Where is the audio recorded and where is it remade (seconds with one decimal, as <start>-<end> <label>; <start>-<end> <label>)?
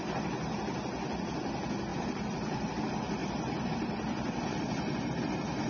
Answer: 0.0-1.9 recorded; 1.9-2.8 remade; 2.8-5.7 recorded